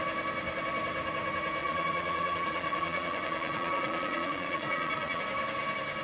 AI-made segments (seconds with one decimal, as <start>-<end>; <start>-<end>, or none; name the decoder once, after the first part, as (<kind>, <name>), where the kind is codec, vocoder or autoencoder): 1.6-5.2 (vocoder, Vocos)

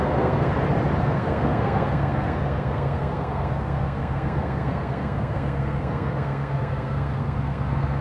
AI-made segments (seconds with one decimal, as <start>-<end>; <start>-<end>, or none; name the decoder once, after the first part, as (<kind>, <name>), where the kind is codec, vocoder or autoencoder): 0.0-0.5 (codec, SNAC); 1.0-8.0

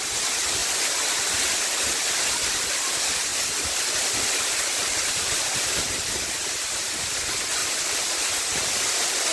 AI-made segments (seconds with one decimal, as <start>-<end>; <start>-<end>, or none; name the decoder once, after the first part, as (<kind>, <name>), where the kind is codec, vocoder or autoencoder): 4.8-6.0 (vocoder, BigVGAN v2); 7.6-8.4

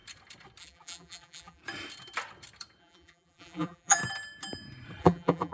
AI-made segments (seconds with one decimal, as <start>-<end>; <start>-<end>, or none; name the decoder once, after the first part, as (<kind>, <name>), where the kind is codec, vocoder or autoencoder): 0.6-1.6 (vocoder, BigVGAN v2); 2.8-4.0; 5.0-5.5